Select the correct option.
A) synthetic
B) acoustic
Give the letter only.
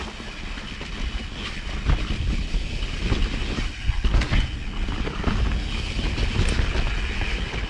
B